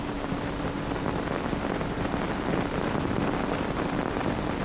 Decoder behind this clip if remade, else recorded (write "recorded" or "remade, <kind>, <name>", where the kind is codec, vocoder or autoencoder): remade, vocoder, BigVGAN v2